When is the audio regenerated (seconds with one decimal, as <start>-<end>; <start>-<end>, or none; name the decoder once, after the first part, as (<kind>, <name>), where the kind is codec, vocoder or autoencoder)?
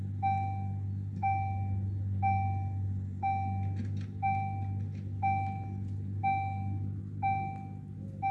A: none